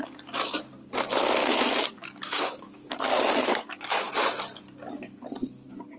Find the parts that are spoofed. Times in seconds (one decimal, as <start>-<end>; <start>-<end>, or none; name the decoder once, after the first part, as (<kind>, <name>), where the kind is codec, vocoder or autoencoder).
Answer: 1.4-4.1 (codec, DAC)